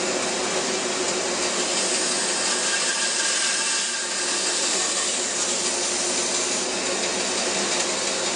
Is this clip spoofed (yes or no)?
no